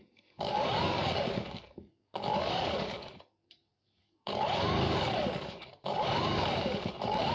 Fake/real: fake